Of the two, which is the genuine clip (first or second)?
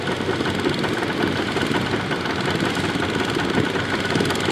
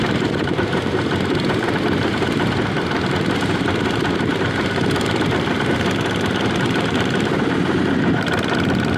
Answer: first